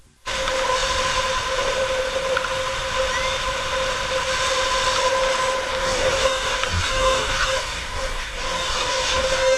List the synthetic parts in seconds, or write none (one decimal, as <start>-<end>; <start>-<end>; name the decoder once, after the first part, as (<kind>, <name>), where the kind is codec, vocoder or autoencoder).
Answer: 5.7-9.6 (codec, DAC)